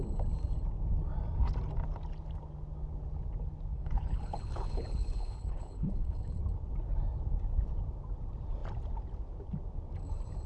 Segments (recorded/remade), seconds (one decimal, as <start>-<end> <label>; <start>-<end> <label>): 0.0-3.7 recorded; 3.7-6.4 remade; 6.4-10.5 recorded